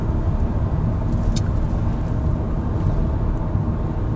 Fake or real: real